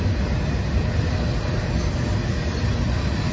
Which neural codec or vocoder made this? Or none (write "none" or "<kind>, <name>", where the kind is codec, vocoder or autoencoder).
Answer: none